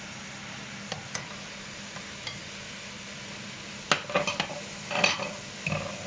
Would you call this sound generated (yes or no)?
no